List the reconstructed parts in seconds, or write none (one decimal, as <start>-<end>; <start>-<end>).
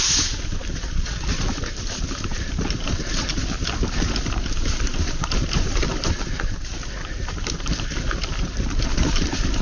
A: none